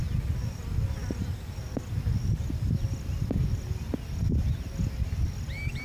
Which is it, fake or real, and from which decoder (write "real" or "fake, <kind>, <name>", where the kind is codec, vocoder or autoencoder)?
real